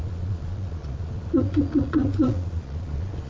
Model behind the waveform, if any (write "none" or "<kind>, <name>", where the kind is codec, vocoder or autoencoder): vocoder, Vocos